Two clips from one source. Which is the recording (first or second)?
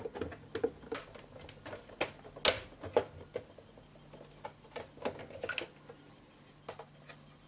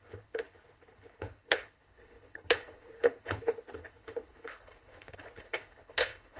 first